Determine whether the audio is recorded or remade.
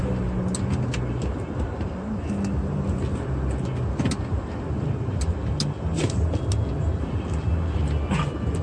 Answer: recorded